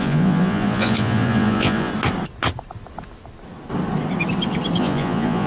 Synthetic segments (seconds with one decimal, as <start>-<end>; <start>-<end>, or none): 0.0-1.9; 4.8-5.5